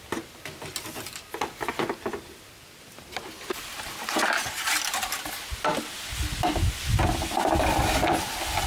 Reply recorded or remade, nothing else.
recorded